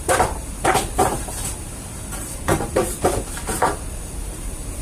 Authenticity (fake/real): fake